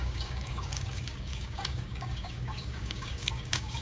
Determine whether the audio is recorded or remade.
remade